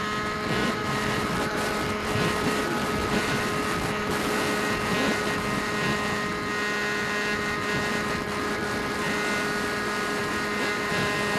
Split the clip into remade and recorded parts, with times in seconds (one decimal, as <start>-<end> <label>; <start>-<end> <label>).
0.0-0.6 recorded; 0.6-1.3 remade; 1.3-10.2 recorded; 10.2-10.9 remade; 10.9-11.4 recorded